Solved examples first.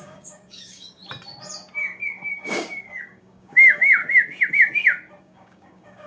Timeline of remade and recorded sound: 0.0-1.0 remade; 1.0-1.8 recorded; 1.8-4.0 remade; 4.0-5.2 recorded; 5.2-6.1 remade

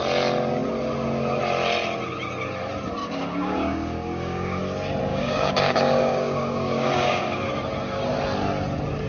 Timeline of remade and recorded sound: 0.0-3.0 recorded; 3.0-4.6 remade; 4.6-5.1 recorded; 5.1-7.5 remade; 7.5-9.1 recorded

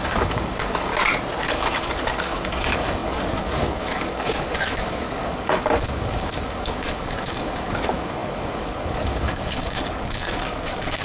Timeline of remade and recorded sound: 0.0-0.9 remade; 0.9-1.4 recorded; 1.4-11.0 remade

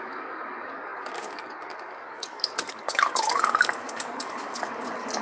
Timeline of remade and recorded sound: 0.0-5.2 remade

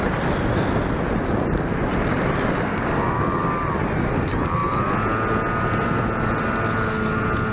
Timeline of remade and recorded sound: 0.0-2.7 recorded; 2.7-3.5 remade; 3.5-7.5 recorded

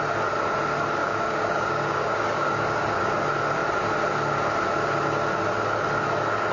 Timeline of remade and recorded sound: 0.0-1.0 recorded; 1.0-3.1 remade; 3.1-6.5 recorded

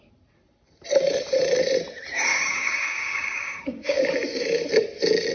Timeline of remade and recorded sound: 0.0-2.3 recorded; 2.3-4.0 remade; 4.0-5.3 recorded

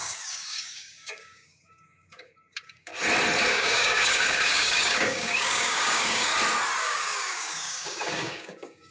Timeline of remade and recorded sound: 0.0-2.9 remade; 2.9-3.5 recorded; 3.5-6.3 remade; 6.3-6.8 recorded; 6.8-8.9 remade